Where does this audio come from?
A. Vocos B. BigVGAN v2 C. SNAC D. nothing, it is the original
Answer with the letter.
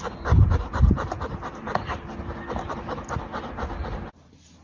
D